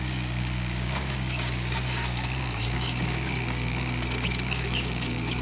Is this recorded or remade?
remade